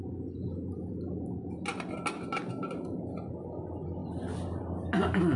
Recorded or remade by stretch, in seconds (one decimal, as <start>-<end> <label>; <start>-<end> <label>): 0.0-5.4 recorded